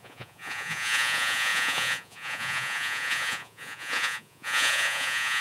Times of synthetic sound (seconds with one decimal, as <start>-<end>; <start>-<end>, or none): 0.0-5.4